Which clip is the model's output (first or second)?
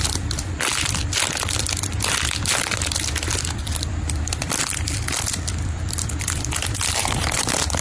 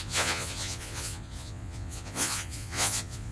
second